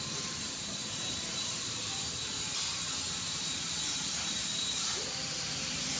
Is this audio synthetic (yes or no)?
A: yes